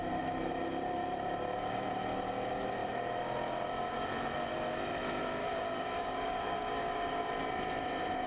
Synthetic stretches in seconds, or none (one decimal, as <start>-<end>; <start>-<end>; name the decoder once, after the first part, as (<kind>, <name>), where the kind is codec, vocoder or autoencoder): 5.4-7.3 (codec, DAC)